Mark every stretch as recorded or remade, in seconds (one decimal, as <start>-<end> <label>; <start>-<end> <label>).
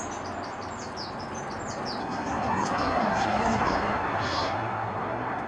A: 0.0-2.0 recorded; 2.0-5.5 remade